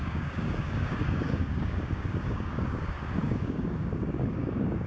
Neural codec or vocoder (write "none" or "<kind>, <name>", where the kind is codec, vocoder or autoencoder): codec, DAC